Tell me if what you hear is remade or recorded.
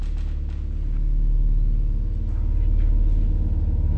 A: recorded